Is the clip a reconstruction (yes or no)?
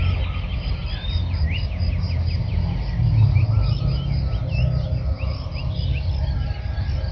no